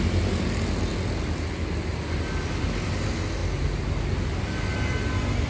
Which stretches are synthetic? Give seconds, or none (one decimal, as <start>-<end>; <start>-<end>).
none